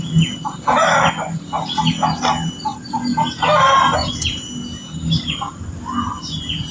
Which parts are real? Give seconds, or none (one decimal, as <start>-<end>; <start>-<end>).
0.0-6.7